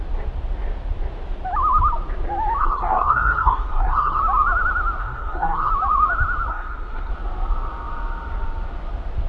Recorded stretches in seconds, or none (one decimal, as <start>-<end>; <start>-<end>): 0.0-2.6; 4.2-5.0; 5.7-6.5; 7.1-9.3